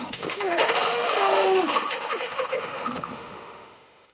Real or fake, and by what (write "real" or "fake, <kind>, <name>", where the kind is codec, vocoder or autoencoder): fake, autoencoder, DAC-VAE